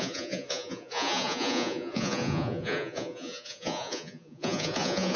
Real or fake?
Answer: fake